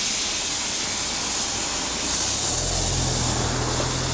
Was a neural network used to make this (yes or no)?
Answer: no